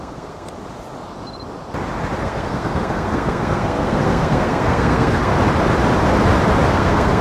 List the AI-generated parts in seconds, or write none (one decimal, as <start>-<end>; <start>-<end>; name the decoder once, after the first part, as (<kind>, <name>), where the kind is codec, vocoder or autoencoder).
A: 0.0-0.5 (codec, SNAC); 2.2-5.3; 6.7-7.2

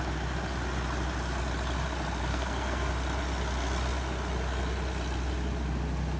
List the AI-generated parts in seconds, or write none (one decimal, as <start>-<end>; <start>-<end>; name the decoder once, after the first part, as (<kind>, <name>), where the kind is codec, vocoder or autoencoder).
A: 2.3-2.9 (codec, SNAC)